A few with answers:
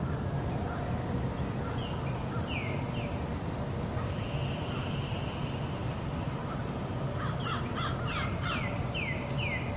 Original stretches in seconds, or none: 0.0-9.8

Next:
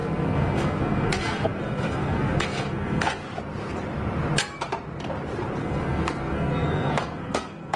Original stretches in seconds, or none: 3.2-5.6